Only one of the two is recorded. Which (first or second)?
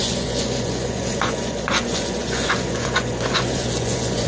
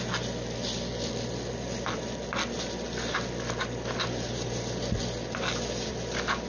second